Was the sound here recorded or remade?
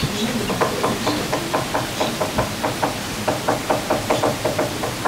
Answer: remade